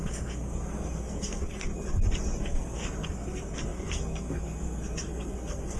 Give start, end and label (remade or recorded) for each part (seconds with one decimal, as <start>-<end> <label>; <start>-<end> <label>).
0.0-1.7 remade; 1.7-2.4 recorded; 2.4-5.8 remade